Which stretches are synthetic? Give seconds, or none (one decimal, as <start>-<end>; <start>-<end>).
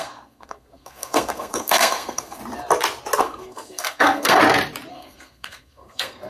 0.0-2.4; 3.2-4.4; 4.9-6.3